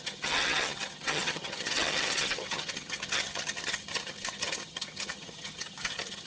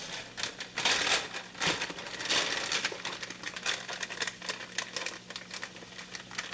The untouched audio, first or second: second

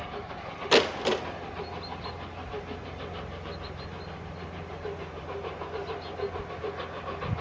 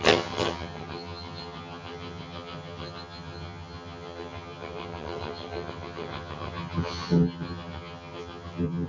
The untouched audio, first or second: first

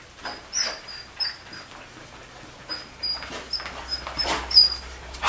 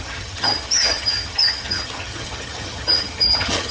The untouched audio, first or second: first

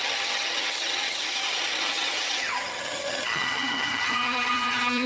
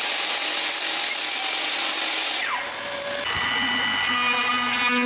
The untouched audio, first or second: second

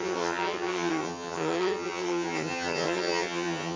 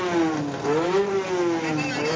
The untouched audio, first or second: second